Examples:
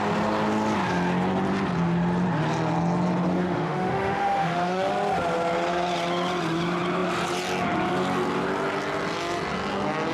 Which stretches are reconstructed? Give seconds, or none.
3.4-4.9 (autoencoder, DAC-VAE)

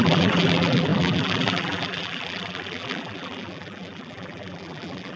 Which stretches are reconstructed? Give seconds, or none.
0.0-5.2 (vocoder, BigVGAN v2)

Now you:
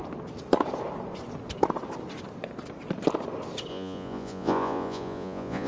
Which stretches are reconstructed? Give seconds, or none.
3.7-5.7 (vocoder, Vocos)

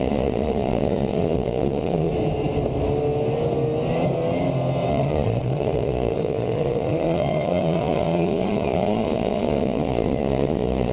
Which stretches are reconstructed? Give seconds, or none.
0.0-2.1 (vocoder, Vocos); 4.9-10.9

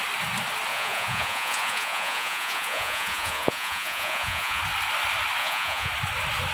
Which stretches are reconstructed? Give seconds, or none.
0.7-4.6 (vocoder, Vocos); 5.4-5.9